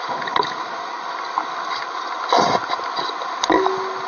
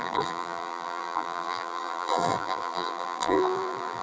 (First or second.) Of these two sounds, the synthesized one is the second